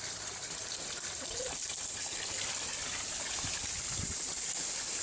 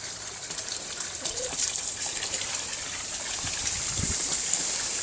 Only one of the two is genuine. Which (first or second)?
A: first